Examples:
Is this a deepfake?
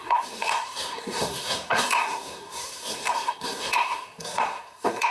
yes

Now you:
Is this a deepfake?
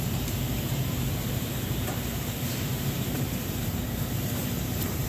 yes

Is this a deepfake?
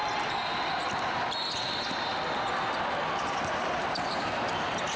no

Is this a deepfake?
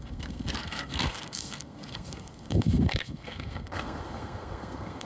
yes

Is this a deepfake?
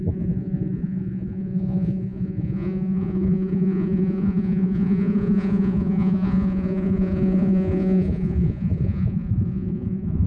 yes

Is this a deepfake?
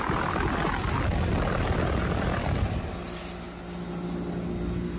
no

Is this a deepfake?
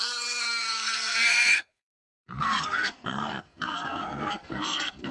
yes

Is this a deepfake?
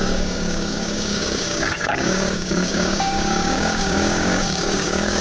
yes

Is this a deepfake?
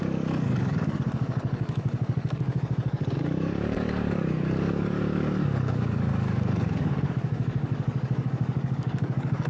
yes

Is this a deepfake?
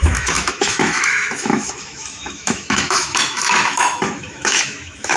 yes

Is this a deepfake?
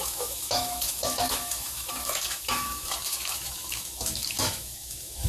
yes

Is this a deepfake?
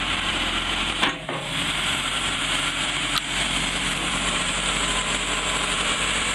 yes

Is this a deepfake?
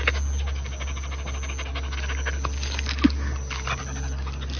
no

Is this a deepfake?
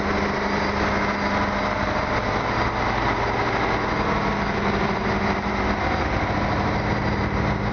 no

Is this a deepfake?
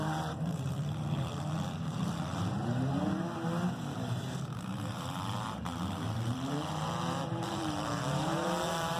yes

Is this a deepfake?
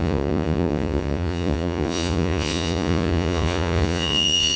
yes